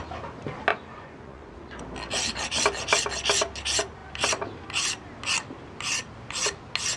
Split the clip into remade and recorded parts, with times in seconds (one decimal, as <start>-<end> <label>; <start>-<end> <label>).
0.0-0.7 recorded; 0.7-1.8 remade; 1.8-7.0 recorded